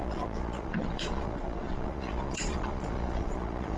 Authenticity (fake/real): fake